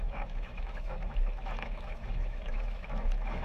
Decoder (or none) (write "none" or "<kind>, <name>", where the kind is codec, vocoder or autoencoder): autoencoder, DAC-VAE